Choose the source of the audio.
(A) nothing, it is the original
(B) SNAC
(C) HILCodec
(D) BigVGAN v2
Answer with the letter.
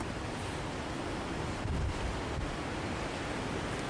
A